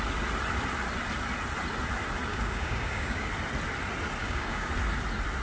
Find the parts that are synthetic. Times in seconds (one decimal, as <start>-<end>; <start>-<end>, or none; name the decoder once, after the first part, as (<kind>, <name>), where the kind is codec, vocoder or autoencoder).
2.3-3.3 (codec, DAC); 4.2-4.7